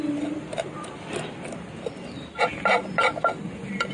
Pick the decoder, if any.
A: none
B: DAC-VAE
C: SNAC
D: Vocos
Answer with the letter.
A